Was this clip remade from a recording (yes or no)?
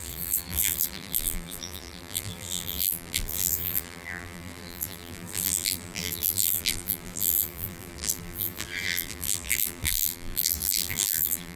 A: yes